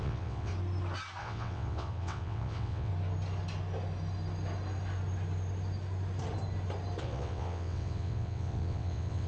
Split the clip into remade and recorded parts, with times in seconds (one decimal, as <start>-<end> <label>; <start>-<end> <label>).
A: 0.0-0.5 remade; 0.5-1.2 recorded; 1.2-2.9 remade; 2.9-7.0 recorded; 7.0-9.3 remade

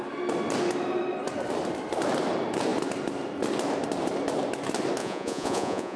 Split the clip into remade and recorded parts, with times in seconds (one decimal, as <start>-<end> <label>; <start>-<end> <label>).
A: 0.0-5.0 recorded; 5.0-6.0 remade

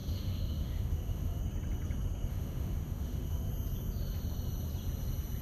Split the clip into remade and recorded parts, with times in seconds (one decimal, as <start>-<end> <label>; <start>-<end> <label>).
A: 0.0-1.4 remade; 1.4-2.3 recorded; 2.3-3.5 remade; 3.5-5.4 recorded

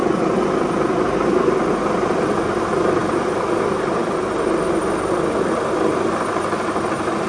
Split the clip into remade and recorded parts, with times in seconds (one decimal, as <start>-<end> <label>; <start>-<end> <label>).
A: 0.0-7.3 recorded

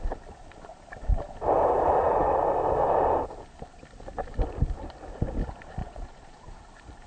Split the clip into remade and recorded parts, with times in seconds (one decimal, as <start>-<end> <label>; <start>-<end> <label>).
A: 0.0-5.8 recorded; 5.8-6.5 remade; 6.5-7.1 recorded

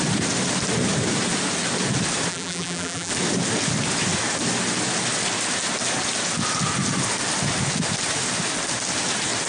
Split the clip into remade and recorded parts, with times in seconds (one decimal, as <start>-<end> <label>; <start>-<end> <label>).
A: 0.0-2.3 recorded; 2.3-3.1 remade; 3.1-9.5 recorded